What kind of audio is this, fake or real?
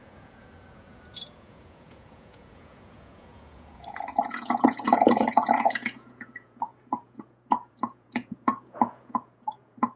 fake